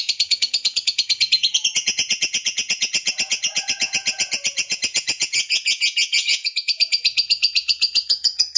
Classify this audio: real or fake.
fake